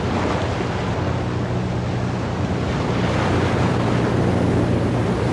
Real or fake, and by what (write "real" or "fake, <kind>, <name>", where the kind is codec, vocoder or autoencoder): real